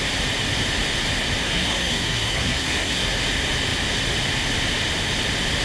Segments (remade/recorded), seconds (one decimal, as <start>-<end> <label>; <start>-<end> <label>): 0.0-1.4 recorded; 1.4-3.2 remade; 3.2-5.6 recorded